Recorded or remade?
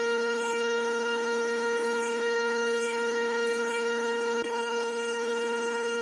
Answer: remade